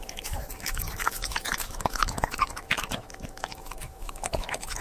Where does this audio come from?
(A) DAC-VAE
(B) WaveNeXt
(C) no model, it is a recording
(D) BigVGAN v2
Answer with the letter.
A